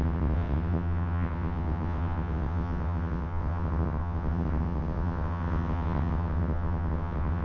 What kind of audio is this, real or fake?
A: fake